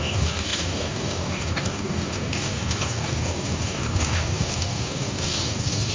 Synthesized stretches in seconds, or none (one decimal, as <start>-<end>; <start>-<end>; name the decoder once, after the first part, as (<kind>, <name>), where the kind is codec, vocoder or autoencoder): 0.0-5.9 (codec, DAC)

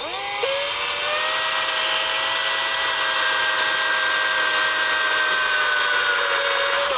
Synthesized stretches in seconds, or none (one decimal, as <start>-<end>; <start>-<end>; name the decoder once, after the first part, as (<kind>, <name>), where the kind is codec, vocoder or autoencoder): none

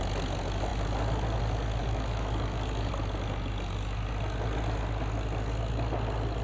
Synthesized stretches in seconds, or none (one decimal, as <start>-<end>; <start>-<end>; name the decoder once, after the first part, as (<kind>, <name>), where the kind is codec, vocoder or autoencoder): 1.8-2.9 (codec, DAC)

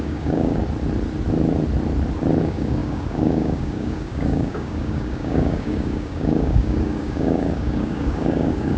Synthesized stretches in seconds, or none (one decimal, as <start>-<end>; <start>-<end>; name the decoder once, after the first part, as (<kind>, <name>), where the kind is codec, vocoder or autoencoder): 0.0-0.6 (codec, DAC); 2.4-8.8

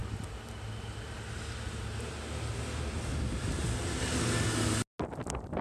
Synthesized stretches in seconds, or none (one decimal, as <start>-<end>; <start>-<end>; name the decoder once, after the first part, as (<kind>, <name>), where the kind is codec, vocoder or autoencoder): none

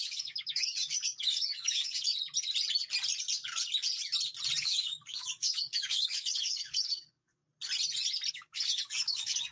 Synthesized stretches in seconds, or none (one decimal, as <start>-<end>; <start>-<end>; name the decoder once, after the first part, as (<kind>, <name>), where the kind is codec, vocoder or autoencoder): 0.0-2.1 (codec, DAC); 4.6-7.4; 8.3-9.5

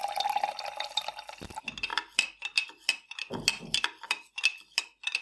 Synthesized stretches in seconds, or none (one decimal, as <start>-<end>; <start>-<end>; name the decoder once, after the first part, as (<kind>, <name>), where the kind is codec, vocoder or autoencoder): none